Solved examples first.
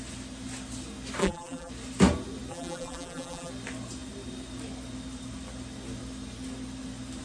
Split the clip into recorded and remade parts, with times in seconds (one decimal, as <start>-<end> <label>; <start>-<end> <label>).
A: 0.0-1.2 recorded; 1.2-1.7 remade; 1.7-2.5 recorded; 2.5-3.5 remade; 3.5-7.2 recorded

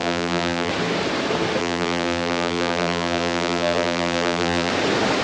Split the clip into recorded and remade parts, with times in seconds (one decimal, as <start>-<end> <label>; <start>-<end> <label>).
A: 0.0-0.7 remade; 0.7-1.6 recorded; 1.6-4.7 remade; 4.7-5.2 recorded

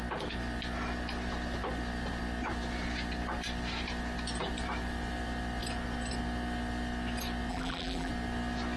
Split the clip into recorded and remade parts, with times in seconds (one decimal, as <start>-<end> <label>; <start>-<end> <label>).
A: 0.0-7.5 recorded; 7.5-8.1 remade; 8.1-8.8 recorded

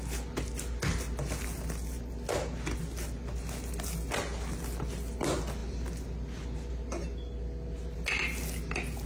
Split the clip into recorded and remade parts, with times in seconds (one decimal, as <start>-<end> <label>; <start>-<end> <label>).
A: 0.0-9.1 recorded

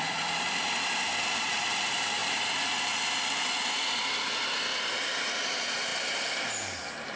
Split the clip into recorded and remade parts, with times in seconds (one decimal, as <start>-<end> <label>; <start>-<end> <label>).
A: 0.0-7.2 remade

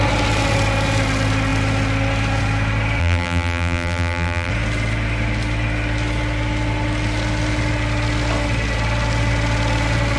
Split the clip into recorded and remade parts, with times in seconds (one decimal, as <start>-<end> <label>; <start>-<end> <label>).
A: 0.0-3.0 recorded; 3.0-4.5 remade; 4.5-10.2 recorded

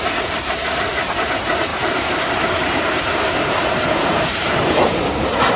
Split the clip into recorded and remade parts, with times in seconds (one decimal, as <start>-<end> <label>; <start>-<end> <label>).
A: 0.0-5.6 remade

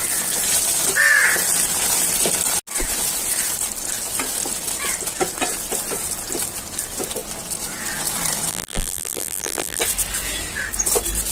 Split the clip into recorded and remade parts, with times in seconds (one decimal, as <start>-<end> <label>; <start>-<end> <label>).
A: 0.0-8.5 recorded; 8.5-9.8 remade; 9.8-11.3 recorded